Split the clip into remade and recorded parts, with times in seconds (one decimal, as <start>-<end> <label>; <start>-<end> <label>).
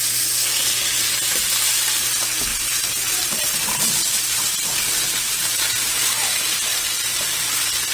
0.0-2.5 recorded; 2.5-6.0 remade; 6.0-6.7 recorded; 6.7-7.4 remade; 7.4-7.9 recorded